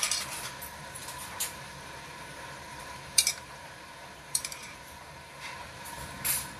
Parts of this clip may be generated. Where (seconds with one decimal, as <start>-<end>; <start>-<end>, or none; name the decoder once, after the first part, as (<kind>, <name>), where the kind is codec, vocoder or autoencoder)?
0.0-6.6 (vocoder, BigVGAN v2)